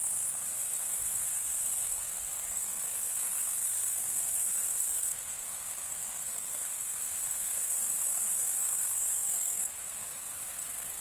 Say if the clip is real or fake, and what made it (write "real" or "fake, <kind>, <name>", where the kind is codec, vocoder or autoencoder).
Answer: fake, codec, SNAC